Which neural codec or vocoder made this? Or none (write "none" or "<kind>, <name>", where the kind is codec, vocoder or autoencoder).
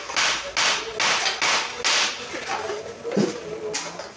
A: none